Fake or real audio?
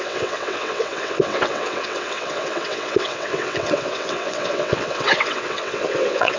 fake